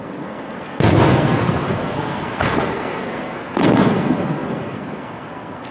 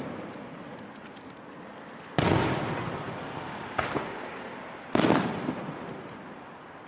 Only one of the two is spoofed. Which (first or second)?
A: first